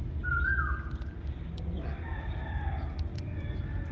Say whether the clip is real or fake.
real